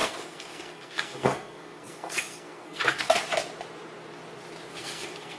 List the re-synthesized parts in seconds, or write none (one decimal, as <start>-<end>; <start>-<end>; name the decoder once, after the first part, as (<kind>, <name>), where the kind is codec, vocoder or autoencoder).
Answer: 0.0-3.2 (codec, SNAC); 4.7-5.4